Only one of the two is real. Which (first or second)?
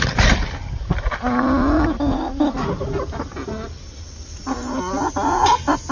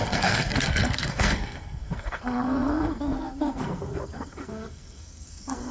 first